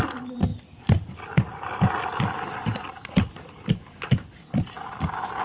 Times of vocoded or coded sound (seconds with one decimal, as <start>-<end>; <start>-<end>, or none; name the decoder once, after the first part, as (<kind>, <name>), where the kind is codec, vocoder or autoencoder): 0.5-3.7 (vocoder, BigVGAN v2)